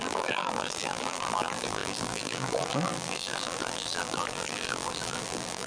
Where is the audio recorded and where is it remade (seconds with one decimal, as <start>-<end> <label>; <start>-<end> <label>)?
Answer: 0.0-5.7 remade